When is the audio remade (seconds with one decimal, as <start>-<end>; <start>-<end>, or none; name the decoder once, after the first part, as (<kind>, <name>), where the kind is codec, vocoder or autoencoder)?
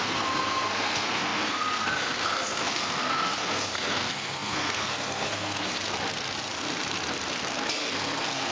0.0-5.7 (codec, SNAC); 7.8-8.5